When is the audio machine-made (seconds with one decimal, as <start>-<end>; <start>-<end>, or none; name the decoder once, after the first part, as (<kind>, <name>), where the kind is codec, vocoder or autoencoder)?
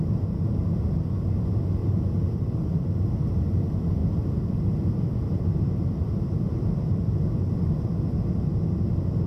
1.8-2.8 (vocoder, BigVGAN v2); 4.0-7.9